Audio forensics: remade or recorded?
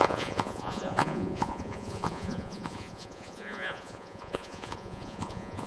remade